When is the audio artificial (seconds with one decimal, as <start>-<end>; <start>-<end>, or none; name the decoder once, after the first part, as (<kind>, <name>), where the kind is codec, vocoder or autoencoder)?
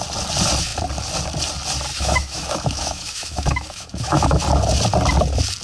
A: 1.9-4.4 (autoencoder, DAC-VAE)